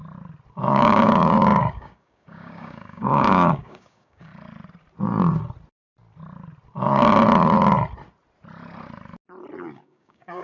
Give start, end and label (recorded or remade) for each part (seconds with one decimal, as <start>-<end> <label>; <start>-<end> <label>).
0.0-0.7 recorded; 0.7-4.3 remade; 4.3-9.6 recorded; 9.6-10.4 remade